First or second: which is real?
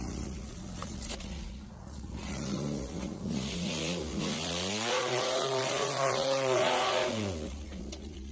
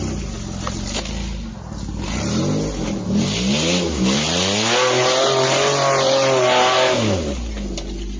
second